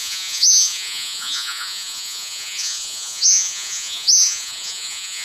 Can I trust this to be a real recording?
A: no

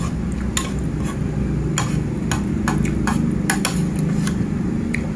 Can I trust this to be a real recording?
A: yes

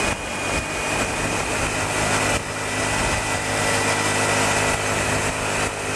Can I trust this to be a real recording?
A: yes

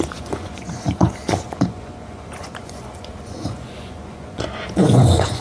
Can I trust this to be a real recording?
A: no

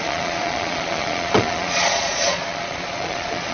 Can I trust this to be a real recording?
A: no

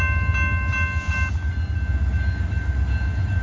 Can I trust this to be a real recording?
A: yes